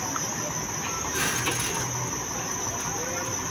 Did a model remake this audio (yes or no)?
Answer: no